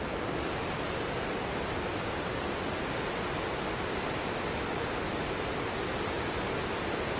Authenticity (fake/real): real